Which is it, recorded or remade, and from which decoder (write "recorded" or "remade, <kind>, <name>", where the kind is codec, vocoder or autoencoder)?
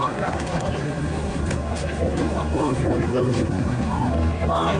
remade, codec, SNAC